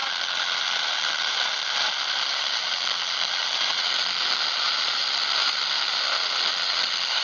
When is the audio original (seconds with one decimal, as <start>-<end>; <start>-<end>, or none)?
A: 0.0-7.2